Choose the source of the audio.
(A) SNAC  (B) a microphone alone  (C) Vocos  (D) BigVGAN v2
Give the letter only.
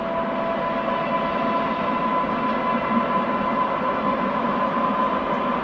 B